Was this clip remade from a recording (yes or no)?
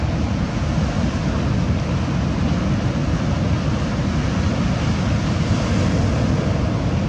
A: no